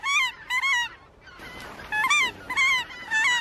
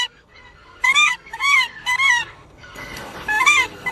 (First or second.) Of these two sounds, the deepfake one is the second